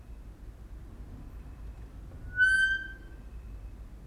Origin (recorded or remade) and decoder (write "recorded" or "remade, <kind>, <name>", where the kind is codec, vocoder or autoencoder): recorded